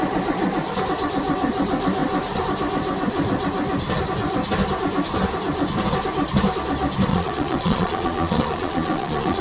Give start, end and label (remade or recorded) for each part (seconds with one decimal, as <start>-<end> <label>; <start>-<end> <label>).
0.0-7.1 recorded; 7.1-9.4 remade